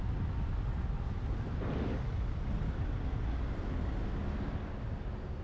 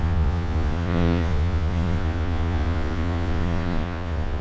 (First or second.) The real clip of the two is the first